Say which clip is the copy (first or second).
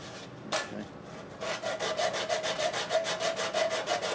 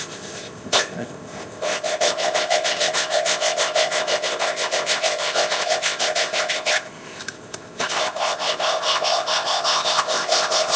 second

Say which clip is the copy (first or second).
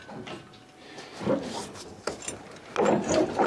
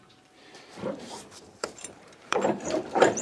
second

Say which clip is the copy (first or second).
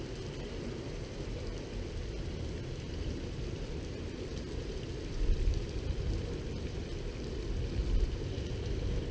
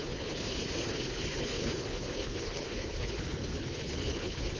second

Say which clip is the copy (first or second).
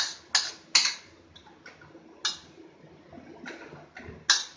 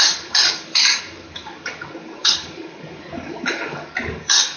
second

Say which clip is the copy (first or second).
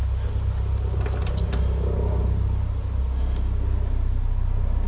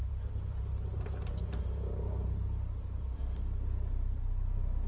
second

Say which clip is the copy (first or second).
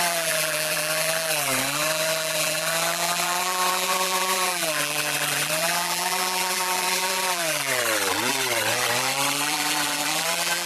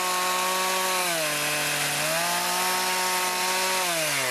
first